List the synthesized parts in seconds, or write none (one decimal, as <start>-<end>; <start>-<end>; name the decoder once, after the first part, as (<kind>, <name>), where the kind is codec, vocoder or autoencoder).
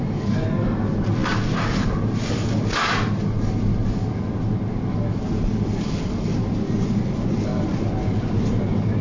none